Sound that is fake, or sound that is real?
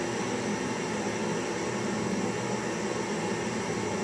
real